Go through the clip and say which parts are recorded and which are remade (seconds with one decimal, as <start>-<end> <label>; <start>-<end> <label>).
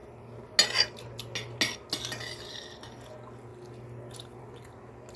0.0-5.2 recorded